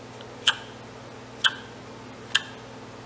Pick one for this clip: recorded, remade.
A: recorded